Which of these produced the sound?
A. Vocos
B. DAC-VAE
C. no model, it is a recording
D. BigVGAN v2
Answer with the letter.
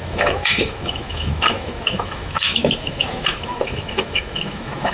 B